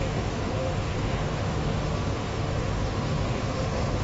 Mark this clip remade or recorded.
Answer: remade